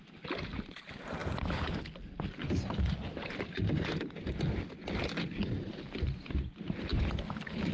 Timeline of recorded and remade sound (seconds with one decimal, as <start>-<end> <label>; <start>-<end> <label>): 0.0-6.9 recorded; 6.9-7.7 remade